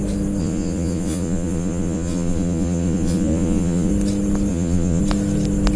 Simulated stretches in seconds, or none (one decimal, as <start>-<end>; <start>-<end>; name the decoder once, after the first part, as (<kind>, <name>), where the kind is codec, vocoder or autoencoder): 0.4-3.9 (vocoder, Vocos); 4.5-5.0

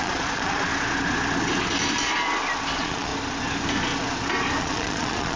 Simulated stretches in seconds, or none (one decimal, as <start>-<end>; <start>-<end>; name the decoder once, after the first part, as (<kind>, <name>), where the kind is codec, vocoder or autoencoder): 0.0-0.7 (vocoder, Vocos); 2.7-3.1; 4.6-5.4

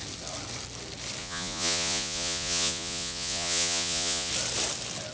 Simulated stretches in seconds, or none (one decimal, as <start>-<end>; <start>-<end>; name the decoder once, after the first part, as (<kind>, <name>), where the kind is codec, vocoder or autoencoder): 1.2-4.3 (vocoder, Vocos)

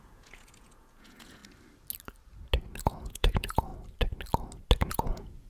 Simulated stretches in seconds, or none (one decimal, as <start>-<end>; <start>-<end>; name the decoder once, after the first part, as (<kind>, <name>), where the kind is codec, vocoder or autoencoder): 0.0-1.4 (vocoder, Vocos); 2.8-3.7; 4.9-5.5

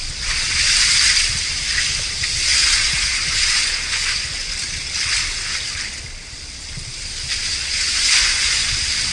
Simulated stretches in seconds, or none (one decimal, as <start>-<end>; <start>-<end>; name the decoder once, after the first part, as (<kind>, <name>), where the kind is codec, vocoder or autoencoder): 2.5-4.5 (vocoder, Vocos); 7.6-8.7

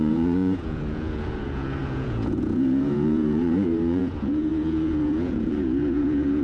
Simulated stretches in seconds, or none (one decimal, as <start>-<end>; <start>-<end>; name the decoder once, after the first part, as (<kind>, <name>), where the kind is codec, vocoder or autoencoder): 0.0-6.4 (vocoder, Vocos)